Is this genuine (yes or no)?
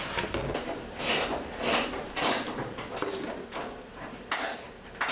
yes